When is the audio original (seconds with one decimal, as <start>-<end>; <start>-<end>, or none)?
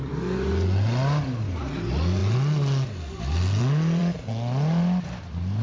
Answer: 0.0-5.6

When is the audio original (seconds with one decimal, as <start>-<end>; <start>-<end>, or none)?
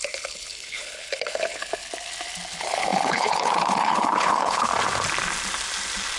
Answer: 1.8-2.5; 4.7-6.2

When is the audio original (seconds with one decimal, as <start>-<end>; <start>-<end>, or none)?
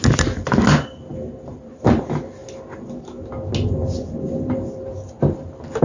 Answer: 0.0-5.8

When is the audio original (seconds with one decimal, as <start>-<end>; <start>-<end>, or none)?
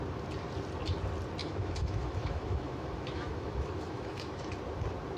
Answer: 0.0-1.4; 4.5-5.2